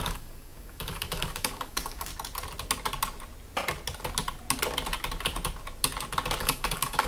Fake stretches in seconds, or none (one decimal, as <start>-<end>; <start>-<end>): 0.0-2.1; 6.4-7.1